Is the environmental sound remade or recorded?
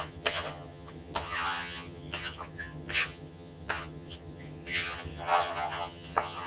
remade